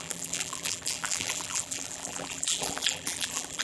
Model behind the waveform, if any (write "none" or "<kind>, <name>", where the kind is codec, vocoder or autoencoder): vocoder, BigVGAN v2